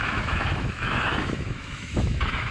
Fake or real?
fake